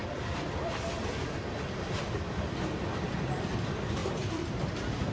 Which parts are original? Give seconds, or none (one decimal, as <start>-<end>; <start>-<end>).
0.0-4.0

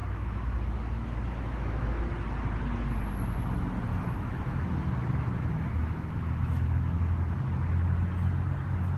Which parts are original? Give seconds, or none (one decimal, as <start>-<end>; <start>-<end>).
2.0-3.9; 7.4-9.0

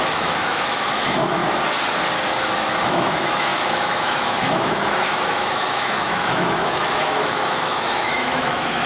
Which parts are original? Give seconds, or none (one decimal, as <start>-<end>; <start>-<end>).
1.4-2.4